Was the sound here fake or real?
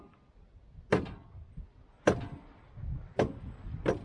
real